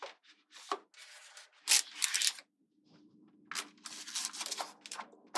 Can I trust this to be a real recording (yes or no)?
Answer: yes